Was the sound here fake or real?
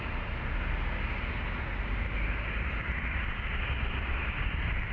real